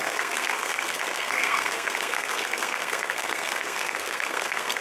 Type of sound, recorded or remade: remade